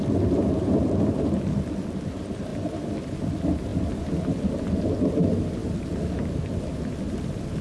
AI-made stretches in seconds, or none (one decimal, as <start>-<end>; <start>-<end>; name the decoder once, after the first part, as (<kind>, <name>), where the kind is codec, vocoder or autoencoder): 0.0-2.5 (vocoder, BigVGAN v2); 3.2-3.7; 4.6-5.6; 6.9-7.6